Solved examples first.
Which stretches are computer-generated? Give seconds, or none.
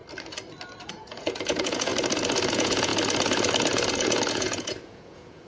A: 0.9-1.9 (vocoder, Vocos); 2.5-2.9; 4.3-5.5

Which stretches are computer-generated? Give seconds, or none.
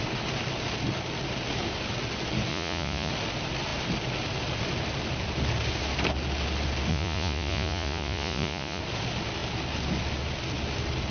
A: 2.5-3.1 (vocoder, Vocos); 6.9-8.8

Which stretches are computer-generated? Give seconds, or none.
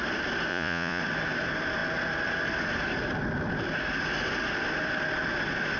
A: 0.5-1.0 (vocoder, Vocos)